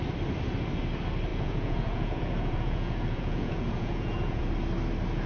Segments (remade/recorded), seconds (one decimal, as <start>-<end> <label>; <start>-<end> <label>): 0.0-1.3 recorded; 1.3-4.5 remade; 4.5-5.3 recorded